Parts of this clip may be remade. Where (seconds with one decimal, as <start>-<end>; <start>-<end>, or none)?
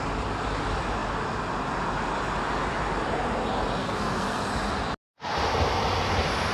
3.8-4.4